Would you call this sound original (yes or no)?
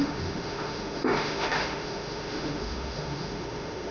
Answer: no